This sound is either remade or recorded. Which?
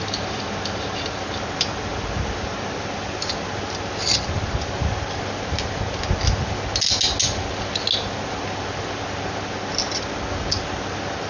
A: recorded